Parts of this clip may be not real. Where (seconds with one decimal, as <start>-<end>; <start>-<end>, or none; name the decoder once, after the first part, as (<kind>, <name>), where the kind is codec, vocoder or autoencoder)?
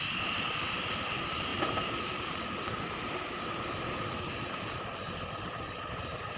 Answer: 0.0-1.5 (vocoder, BigVGAN v2); 4.6-6.4